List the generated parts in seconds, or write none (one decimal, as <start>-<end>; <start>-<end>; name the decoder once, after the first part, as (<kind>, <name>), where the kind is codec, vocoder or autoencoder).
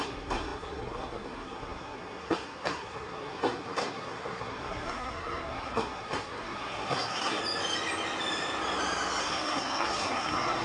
0.0-7.4 (codec, SNAC); 9.2-10.6